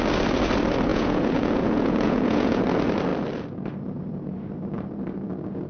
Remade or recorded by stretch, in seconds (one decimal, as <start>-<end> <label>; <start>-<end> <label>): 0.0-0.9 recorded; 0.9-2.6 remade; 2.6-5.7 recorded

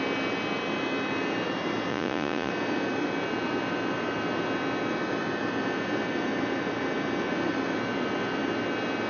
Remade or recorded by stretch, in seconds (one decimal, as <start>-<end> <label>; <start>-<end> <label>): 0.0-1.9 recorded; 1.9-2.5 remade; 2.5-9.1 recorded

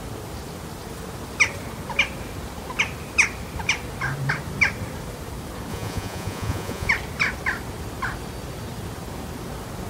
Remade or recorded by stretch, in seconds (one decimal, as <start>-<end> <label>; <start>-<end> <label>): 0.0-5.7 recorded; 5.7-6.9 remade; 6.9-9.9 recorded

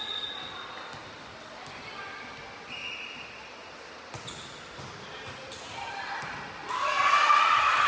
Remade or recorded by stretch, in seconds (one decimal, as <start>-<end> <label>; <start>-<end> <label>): 0.0-7.9 recorded

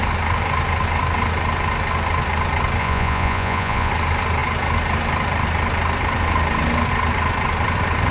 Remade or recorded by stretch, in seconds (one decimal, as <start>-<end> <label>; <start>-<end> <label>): 0.0-2.8 recorded; 2.8-3.9 remade; 3.9-8.1 recorded

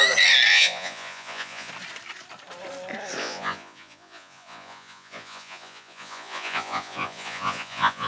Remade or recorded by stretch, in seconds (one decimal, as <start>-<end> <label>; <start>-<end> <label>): 0.0-0.5 recorded; 0.5-1.7 remade; 1.7-3.2 recorded; 3.2-8.1 remade